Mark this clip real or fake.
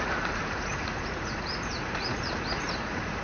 fake